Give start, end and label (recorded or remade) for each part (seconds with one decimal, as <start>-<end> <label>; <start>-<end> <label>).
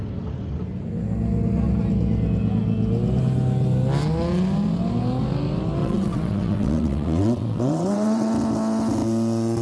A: 0.0-5.8 recorded; 5.8-8.3 remade; 8.3-9.6 recorded